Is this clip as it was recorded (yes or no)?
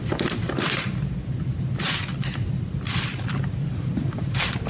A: no